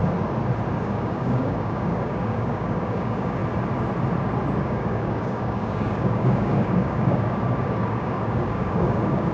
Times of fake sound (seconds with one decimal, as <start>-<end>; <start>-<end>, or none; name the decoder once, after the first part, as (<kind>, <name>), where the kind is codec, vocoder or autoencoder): 0.8-3.4 (codec, DAC); 4.6-9.3

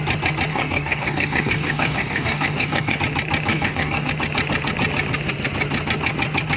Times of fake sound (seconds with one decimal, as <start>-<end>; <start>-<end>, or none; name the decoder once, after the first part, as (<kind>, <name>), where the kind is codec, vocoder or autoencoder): 0.5-3.0 (codec, DAC); 3.5-4.1

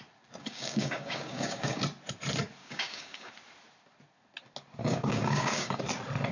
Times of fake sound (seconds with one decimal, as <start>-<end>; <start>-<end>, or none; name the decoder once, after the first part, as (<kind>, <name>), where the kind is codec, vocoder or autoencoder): 0.4-1.8 (codec, DAC); 2.6-3.3; 4.8-5.8

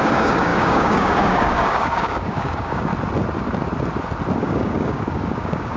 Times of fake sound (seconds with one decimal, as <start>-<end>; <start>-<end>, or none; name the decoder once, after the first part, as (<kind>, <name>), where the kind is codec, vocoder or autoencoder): 0.0-2.9 (codec, DAC); 4.4-5.8

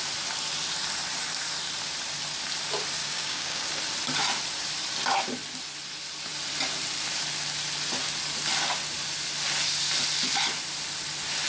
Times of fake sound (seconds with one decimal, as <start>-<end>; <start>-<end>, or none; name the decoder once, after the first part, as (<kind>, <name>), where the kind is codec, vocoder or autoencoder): 3.0-3.7 (codec, DAC)

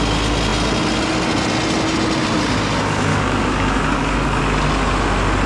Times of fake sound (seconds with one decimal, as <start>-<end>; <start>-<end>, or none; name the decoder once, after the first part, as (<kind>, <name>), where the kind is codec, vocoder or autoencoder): 3.1-4.4 (codec, DAC)